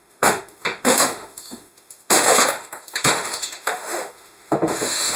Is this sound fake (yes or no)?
yes